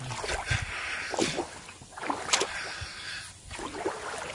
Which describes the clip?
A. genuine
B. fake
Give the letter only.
A